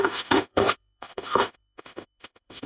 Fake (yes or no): yes